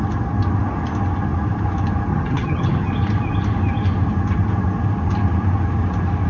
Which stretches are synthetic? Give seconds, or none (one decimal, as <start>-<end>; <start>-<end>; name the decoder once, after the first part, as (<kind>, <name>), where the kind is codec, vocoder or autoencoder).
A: 2.1-2.9 (vocoder, HiFi-GAN)